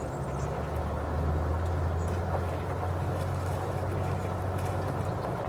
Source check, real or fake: real